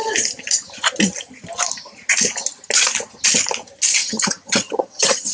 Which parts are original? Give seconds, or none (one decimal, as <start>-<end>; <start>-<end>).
0.0-4.0